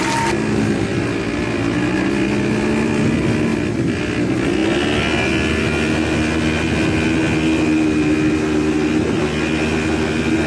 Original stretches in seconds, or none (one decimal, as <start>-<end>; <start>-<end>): 0.0-10.5